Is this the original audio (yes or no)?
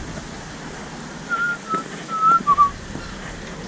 yes